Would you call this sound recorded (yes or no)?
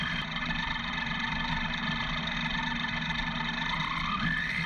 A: yes